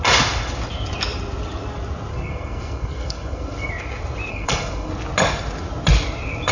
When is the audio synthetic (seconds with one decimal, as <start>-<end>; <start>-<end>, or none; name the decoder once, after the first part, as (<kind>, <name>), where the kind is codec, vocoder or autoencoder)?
2.1-3.7 (codec, SNAC); 4.3-4.9